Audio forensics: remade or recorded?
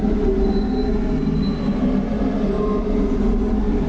recorded